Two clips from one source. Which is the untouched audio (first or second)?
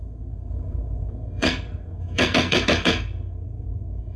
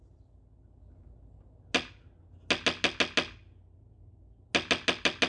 second